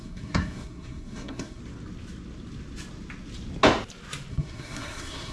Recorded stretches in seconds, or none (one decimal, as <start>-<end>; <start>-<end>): 1.6-4.3